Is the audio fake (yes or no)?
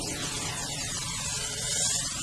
no